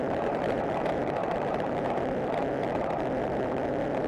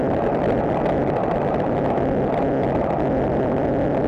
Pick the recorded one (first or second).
second